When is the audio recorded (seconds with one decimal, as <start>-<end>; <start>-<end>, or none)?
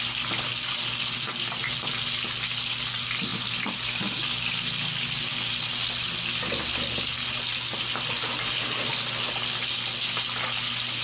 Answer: 0.0-11.0